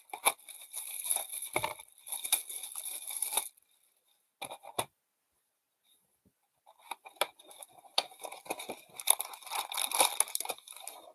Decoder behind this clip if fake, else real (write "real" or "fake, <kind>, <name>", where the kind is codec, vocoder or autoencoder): real